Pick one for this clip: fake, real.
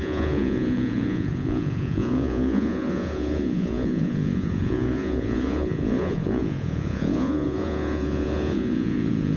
fake